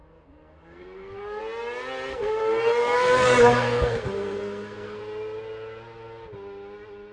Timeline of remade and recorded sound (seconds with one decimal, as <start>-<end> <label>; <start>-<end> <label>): 0.0-1.4 remade; 1.4-2.1 recorded; 2.1-5.0 remade; 5.0-7.1 recorded